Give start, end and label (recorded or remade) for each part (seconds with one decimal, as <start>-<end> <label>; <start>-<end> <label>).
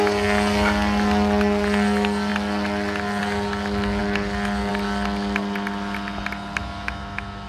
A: 0.0-6.6 recorded; 6.6-7.5 remade